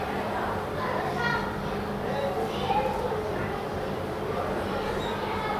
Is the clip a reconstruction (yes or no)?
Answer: yes